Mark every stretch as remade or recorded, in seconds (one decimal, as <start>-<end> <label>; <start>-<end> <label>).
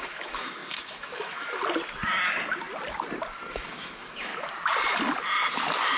0.0-1.6 remade; 1.6-3.5 recorded; 3.5-4.3 remade; 4.3-6.0 recorded